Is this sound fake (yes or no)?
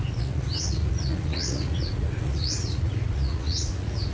yes